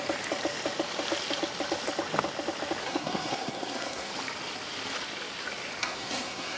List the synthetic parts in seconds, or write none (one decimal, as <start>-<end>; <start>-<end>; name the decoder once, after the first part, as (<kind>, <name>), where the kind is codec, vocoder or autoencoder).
2.8-4.1 (codec, SNAC); 5.8-6.6